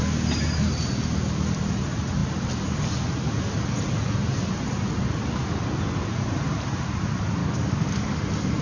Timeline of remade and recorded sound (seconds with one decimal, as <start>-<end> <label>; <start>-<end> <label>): 0.0-7.4 recorded; 7.4-8.2 remade; 8.2-8.6 recorded